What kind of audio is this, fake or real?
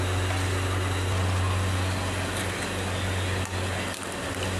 real